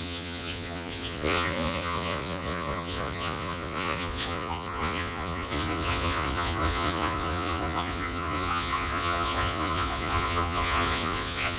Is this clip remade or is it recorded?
remade